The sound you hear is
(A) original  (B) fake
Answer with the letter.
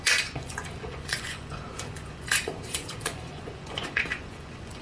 B